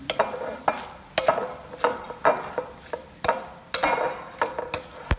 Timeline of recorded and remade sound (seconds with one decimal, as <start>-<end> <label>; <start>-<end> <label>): 0.0-5.2 recorded